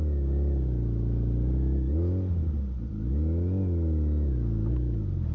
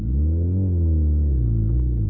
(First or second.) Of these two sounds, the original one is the first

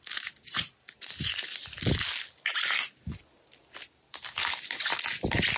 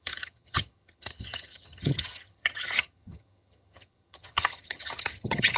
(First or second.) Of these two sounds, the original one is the first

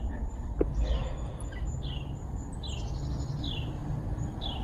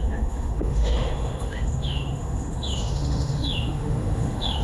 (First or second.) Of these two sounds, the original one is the first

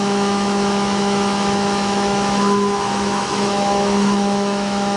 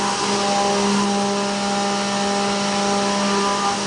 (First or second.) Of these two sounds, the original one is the second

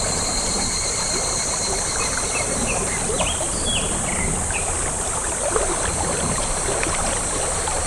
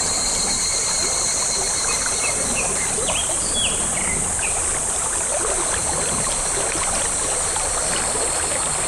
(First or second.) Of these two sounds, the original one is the second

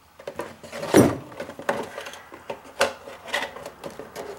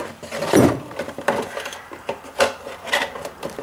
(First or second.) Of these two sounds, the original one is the first